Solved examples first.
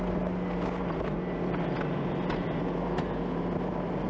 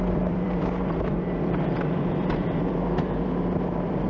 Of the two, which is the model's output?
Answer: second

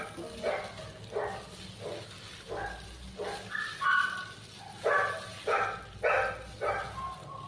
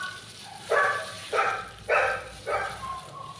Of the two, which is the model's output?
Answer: second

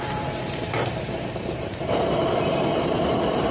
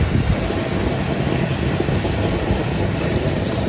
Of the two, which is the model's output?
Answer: first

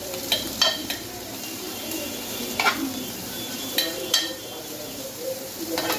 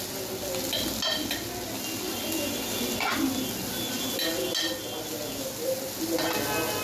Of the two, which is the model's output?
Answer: first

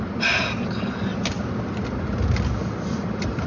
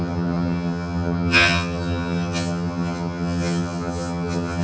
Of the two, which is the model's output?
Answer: second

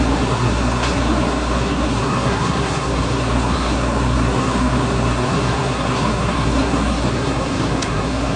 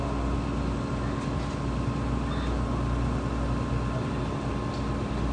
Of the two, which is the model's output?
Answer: first